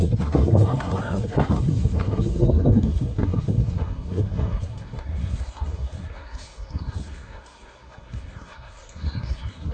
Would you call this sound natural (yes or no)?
no